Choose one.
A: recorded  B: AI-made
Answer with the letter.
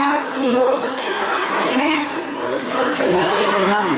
B